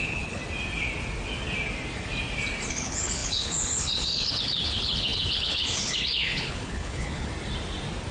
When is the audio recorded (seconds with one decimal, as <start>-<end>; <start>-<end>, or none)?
0.4-2.7; 7.3-8.1